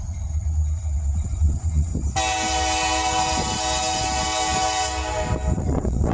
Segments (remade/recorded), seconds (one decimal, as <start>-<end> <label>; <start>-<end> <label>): 0.0-1.9 remade; 1.9-5.6 recorded; 5.6-6.1 remade